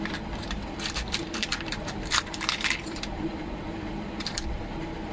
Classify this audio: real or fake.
fake